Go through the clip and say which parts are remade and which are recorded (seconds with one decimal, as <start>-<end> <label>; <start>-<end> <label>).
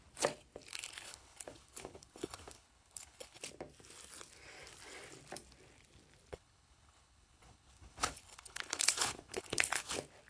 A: 0.0-0.7 recorded; 0.7-3.4 remade; 3.4-6.3 recorded; 6.3-9.8 remade; 9.8-10.3 recorded